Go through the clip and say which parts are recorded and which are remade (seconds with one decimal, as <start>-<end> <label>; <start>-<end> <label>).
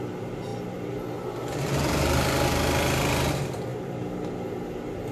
0.0-5.1 recorded